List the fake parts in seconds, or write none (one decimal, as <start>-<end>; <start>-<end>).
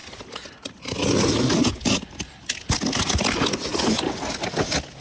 none